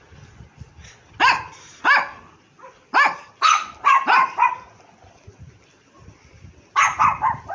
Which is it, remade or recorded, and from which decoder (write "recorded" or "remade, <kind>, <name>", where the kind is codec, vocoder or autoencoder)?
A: recorded